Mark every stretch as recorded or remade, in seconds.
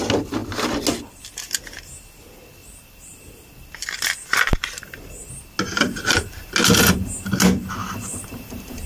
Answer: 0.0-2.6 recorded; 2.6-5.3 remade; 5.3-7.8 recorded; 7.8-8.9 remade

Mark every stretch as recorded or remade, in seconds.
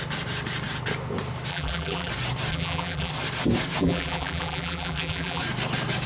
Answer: 0.0-1.5 recorded; 1.5-2.1 remade; 2.1-2.5 recorded; 2.5-3.1 remade; 3.1-3.8 recorded; 3.8-5.4 remade; 5.4-6.1 recorded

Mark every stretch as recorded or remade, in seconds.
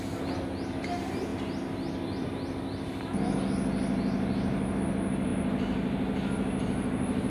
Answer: 0.0-1.3 remade; 1.3-4.8 recorded; 4.8-5.3 remade; 5.3-7.3 recorded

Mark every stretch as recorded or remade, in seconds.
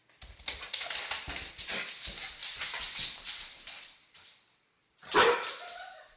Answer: 0.0-1.7 recorded; 1.7-6.2 remade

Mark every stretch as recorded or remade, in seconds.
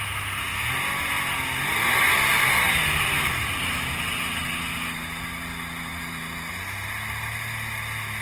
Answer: 0.0-8.2 recorded